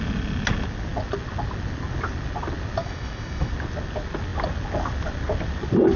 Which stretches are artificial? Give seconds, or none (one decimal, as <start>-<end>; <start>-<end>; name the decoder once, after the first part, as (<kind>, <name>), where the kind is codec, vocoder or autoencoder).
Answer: 2.8-3.5 (autoencoder, DAC-VAE)